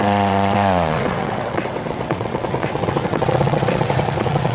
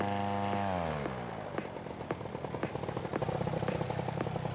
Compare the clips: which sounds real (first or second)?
second